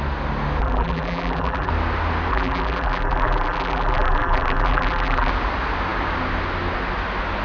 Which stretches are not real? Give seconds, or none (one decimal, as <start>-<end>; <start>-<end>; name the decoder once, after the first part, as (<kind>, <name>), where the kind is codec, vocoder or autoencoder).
0.6-1.7 (vocoder, BigVGAN v2); 2.3-5.3